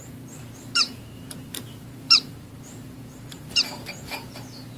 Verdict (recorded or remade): remade